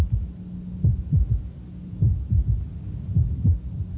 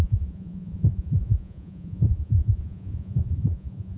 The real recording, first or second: first